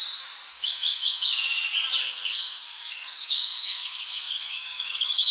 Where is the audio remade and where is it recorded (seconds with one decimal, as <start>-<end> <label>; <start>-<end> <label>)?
0.0-0.5 recorded; 0.5-1.3 remade; 1.3-2.0 recorded; 2.0-5.3 remade